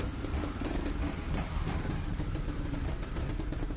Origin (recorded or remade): remade